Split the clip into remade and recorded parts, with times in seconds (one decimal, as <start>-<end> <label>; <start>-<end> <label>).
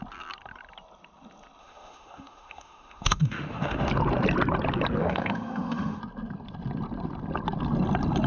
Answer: 0.0-1.6 recorded; 1.6-3.9 remade; 3.9-5.0 recorded; 5.0-6.0 remade; 6.0-8.3 recorded